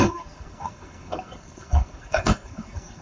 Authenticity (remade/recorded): remade